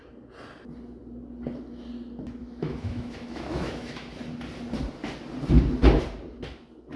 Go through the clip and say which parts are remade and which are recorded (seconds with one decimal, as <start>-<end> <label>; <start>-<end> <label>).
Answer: 0.0-2.4 recorded; 2.4-4.2 remade; 4.2-7.0 recorded